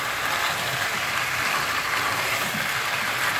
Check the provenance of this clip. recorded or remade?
remade